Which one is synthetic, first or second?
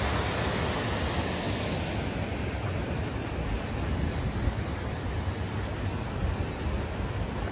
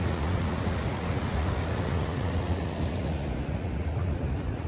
second